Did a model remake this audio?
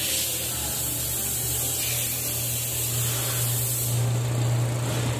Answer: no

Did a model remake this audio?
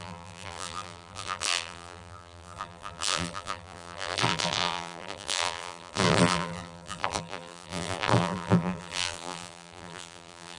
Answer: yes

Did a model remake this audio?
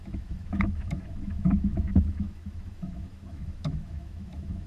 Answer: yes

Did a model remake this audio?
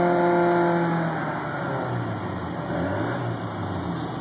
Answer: no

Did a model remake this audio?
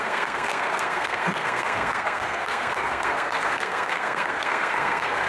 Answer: yes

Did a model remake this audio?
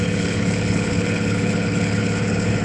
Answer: yes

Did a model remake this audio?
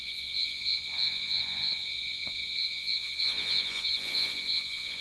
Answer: yes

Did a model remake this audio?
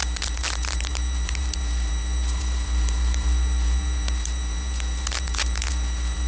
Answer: yes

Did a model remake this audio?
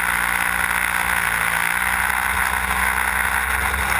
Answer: no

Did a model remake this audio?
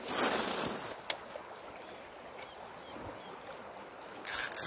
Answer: no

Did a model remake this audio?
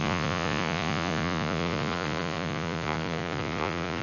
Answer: yes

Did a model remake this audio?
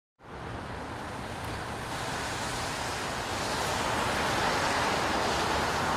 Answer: no